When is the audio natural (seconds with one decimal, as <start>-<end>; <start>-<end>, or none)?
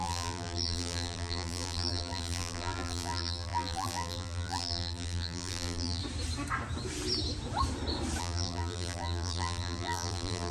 6.0-8.2